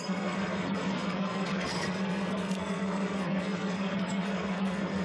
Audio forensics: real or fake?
fake